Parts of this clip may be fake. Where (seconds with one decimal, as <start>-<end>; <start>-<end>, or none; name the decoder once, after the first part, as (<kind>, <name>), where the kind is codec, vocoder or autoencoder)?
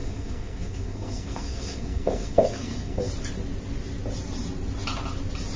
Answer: 0.0-3.1 (codec, SNAC)